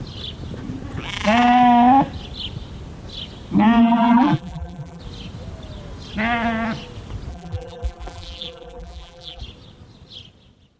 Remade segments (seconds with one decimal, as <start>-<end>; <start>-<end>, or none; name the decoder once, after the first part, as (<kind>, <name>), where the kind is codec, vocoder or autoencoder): 3.8-5.0 (vocoder, BigVGAN v2); 7.3-9.4